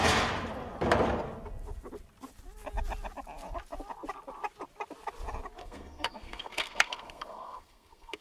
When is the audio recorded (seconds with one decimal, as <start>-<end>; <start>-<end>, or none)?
0.0-5.6